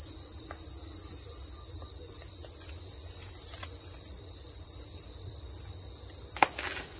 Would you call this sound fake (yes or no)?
no